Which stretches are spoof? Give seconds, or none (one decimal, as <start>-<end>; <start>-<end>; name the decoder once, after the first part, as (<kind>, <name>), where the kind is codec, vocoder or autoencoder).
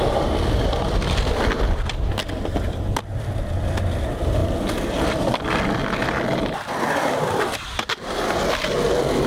none